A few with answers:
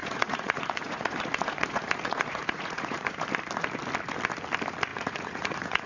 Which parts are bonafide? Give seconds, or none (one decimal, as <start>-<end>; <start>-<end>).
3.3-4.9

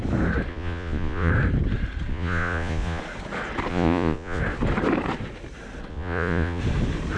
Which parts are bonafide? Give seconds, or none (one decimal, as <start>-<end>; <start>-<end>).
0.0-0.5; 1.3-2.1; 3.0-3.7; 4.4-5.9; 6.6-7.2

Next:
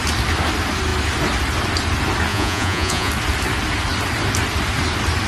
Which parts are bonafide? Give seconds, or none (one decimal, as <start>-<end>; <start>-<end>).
0.0-2.3; 3.1-5.3

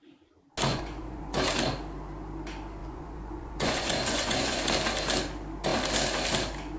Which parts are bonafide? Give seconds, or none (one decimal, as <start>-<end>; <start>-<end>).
0.0-0.7; 1.4-2.8; 4.6-6.8

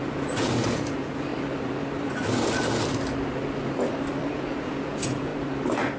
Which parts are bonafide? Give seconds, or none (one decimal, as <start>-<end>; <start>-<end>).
1.3-4.3; 5.3-6.0

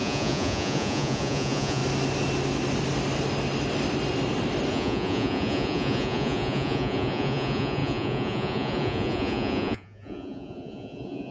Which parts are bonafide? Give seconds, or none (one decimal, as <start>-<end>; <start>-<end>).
1.8-4.7